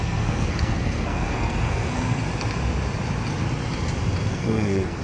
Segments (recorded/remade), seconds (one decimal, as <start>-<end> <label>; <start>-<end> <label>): 0.0-2.2 remade; 2.2-4.3 recorded; 4.3-5.0 remade